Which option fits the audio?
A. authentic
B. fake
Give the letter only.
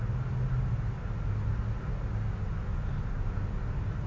A